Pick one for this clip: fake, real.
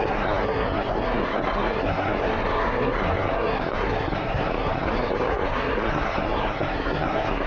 fake